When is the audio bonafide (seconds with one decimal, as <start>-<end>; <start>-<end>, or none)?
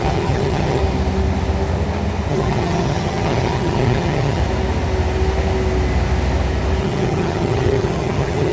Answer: 0.8-2.3; 4.4-6.8